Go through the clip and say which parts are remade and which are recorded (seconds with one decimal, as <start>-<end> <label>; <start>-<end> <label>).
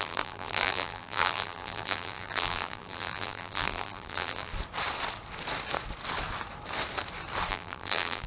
0.0-4.5 remade; 4.5-7.5 recorded; 7.5-8.3 remade